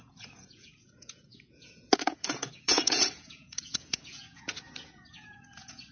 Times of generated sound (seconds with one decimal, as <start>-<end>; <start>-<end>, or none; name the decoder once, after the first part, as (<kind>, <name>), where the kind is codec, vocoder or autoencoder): 0.0-5.9 (vocoder, Vocos)